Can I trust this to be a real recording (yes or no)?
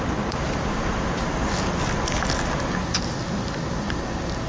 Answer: yes